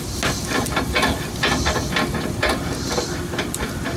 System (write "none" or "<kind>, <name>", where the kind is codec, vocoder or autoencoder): none